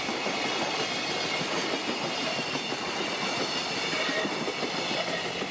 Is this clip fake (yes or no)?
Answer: no